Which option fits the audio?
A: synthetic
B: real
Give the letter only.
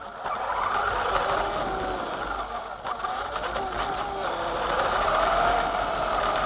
B